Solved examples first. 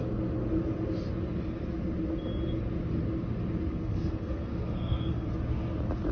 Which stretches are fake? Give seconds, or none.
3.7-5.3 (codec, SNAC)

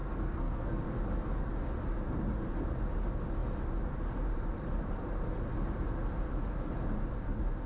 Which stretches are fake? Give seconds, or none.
0.0-0.8 (codec, SNAC)

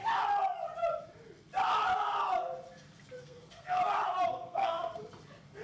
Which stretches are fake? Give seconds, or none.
3.2-3.8 (codec, SNAC); 4.3-5.0

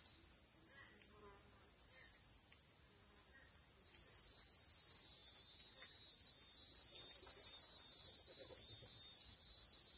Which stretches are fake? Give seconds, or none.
none

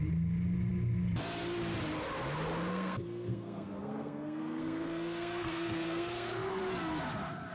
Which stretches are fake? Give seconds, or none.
2.7-6.6 (codec, SNAC)

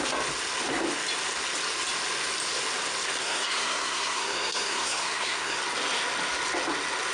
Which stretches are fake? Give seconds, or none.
3.2-5.6 (codec, SNAC)